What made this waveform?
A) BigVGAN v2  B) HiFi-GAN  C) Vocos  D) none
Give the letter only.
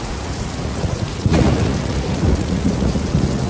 C